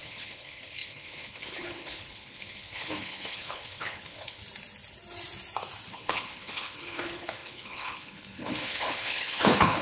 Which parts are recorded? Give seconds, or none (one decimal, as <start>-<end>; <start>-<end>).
4.4-5.9